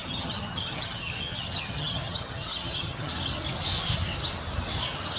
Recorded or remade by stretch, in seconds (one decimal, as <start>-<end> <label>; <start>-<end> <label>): 0.0-3.1 remade; 3.1-5.2 recorded